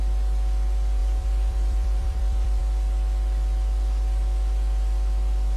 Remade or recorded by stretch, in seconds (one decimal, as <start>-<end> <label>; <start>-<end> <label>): 0.0-1.0 recorded; 1.0-2.6 remade; 2.6-5.6 recorded